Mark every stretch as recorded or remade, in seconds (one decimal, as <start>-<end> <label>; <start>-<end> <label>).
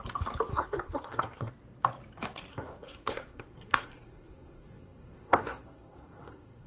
0.0-0.5 recorded; 0.5-1.5 remade; 1.5-2.5 recorded; 2.5-6.7 remade